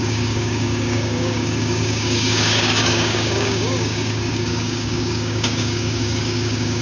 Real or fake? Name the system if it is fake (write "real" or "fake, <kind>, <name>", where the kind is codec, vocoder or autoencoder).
fake, codec, DAC